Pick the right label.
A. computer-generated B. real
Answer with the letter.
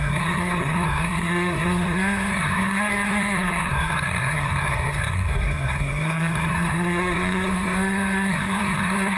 A